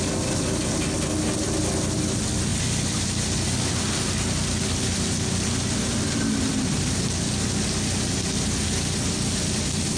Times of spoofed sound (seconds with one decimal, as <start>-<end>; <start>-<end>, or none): none